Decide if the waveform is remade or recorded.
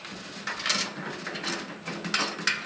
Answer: recorded